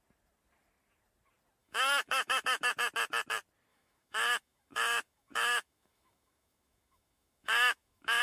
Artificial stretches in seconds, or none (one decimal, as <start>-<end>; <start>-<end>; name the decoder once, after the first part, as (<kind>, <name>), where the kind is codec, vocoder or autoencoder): 1.6-2.7 (autoencoder, DAC-VAE); 3.7-8.2